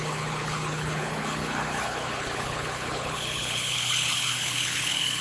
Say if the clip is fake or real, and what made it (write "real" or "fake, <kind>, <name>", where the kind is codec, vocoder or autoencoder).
fake, codec, HILCodec